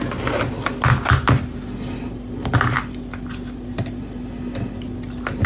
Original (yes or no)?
yes